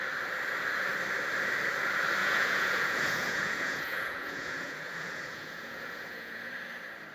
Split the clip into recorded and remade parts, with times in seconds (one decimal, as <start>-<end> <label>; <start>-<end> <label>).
0.0-2.2 recorded; 2.2-6.5 remade; 6.5-7.1 recorded